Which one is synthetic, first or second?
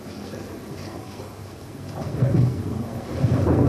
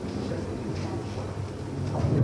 first